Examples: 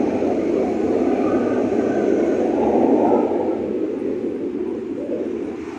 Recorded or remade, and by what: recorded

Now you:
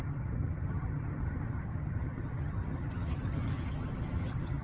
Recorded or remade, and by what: remade, vocoder, HiFi-GAN